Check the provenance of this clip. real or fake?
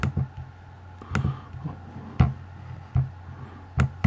real